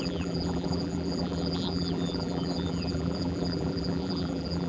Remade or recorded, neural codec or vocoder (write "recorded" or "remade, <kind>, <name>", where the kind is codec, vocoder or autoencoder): remade, vocoder, BigVGAN v2